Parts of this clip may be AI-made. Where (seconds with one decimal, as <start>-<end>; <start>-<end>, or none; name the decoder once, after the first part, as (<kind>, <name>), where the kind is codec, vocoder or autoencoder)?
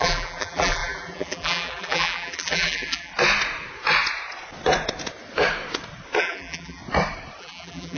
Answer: 0.0-3.1 (vocoder, BigVGAN v2); 6.2-6.8; 7.4-8.0